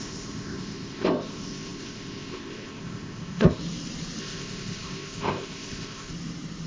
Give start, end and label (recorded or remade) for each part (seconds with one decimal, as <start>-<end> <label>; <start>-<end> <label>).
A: 0.0-3.6 remade; 3.6-4.2 recorded; 4.2-6.1 remade; 6.1-6.7 recorded